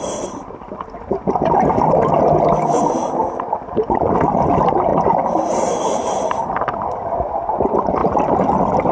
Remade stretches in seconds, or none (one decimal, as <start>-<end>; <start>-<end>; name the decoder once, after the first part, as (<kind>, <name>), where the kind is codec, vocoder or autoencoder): none